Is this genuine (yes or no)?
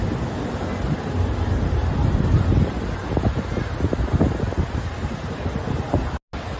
yes